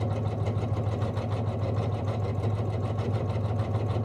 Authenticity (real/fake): real